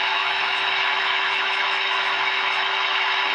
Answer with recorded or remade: remade